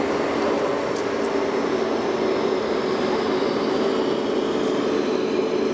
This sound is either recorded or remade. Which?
recorded